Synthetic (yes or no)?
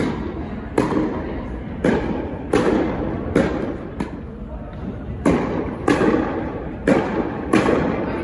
no